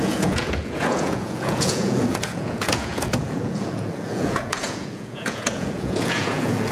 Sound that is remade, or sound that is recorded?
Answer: remade